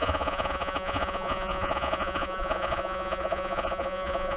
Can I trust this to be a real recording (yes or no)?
no